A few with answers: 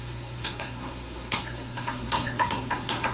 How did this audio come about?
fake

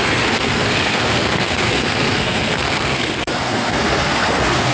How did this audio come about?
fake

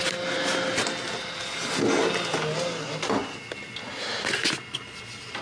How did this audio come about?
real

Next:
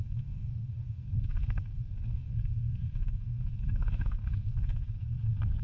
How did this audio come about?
fake